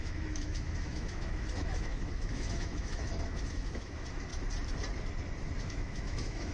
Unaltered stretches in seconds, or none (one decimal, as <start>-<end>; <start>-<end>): 4.3-5.6